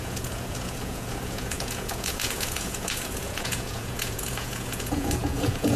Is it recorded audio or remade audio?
remade